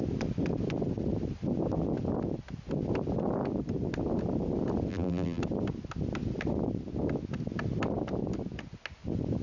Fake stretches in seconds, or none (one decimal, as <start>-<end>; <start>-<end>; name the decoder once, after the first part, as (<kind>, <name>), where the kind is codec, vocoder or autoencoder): 4.9-5.4 (vocoder, BigVGAN v2)